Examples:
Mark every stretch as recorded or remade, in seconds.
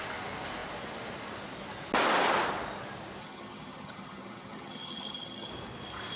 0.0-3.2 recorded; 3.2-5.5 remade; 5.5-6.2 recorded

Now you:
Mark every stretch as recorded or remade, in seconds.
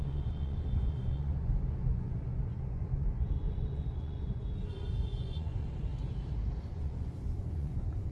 0.0-5.9 remade; 5.9-6.7 recorded; 6.7-8.1 remade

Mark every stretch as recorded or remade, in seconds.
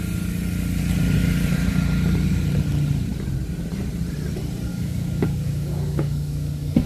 0.0-4.7 recorded; 4.7-6.9 remade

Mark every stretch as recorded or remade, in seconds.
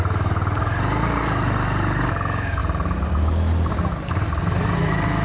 0.0-5.2 recorded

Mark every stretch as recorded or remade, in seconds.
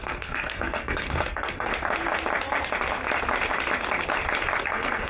0.0-1.7 remade; 1.7-4.6 recorded; 4.6-5.1 remade